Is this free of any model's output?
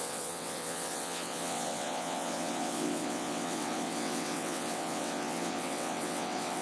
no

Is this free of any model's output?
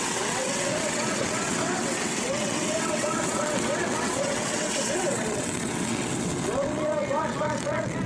no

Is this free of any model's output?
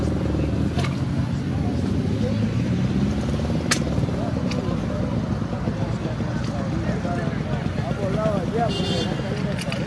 yes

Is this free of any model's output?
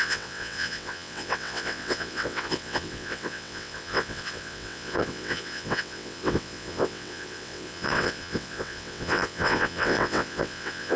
no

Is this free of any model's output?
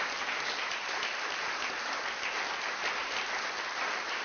yes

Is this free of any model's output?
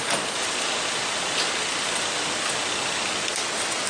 yes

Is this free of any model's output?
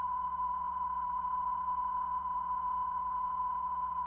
no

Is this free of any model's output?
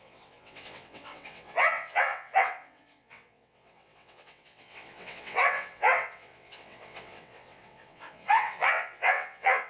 no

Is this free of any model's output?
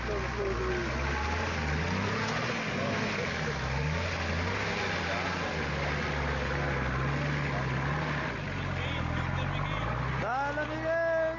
yes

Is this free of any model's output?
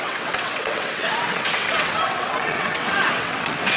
no